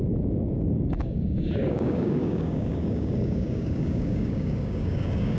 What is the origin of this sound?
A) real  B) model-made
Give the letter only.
B